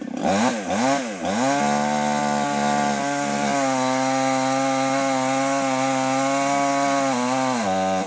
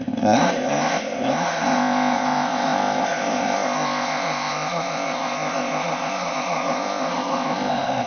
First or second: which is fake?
second